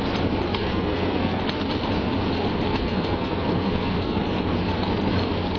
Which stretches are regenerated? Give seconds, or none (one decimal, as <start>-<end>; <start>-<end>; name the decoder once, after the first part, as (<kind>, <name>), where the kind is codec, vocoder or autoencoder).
0.5-1.4 (codec, SNAC); 2.7-4.2